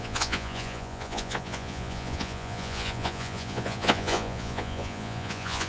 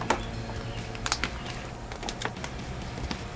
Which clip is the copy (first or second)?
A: first